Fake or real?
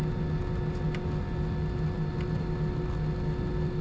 real